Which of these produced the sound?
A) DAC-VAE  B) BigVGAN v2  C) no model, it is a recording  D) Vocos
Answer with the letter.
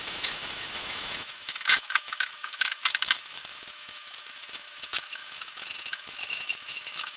A